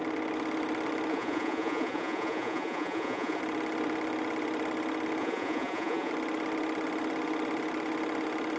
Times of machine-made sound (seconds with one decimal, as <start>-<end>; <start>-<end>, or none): 1.1-3.4; 5.2-6.1